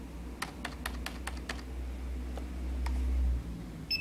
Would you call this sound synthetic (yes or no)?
no